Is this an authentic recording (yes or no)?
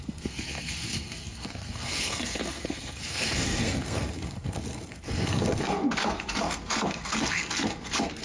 no